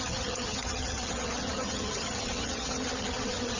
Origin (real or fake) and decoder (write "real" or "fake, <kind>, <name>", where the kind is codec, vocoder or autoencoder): fake, vocoder, HiFi-GAN